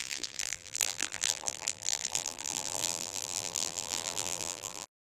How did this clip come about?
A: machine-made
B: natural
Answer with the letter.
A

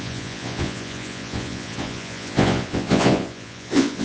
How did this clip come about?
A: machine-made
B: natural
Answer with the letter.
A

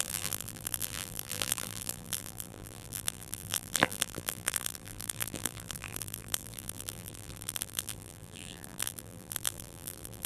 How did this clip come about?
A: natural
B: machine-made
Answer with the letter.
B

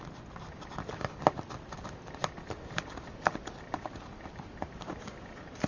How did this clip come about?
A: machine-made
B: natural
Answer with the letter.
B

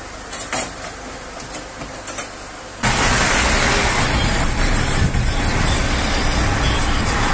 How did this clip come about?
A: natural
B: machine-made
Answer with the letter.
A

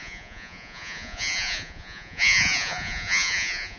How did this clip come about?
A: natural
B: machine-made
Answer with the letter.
B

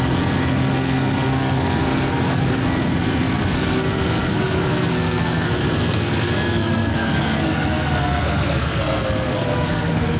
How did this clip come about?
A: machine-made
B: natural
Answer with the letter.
A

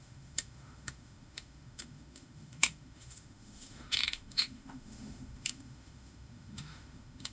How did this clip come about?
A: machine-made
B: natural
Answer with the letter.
A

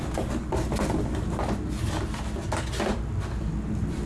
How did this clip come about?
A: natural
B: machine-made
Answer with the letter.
A